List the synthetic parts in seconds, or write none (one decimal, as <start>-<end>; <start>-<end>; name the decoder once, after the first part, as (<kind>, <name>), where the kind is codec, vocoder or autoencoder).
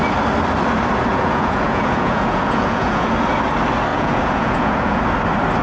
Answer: 1.1-3.1 (vocoder, Vocos); 3.9-5.0